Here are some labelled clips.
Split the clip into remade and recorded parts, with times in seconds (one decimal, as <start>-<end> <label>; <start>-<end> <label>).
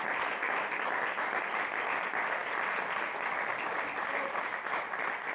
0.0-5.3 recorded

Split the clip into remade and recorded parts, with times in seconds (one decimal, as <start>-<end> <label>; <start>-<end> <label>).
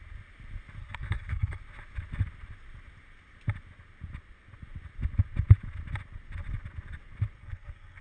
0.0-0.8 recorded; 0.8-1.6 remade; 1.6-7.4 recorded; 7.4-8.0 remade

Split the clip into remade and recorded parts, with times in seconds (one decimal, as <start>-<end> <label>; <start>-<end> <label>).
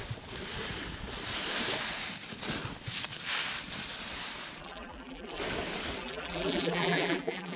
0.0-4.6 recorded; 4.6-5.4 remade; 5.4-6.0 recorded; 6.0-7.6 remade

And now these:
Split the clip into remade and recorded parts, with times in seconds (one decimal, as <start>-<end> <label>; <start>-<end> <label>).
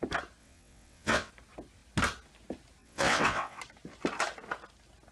0.0-0.4 recorded; 0.4-1.3 remade; 1.3-2.8 recorded; 2.8-3.6 remade; 3.6-5.1 recorded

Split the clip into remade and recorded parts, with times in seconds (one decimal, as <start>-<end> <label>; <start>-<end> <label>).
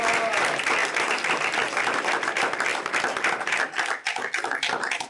0.0-5.1 recorded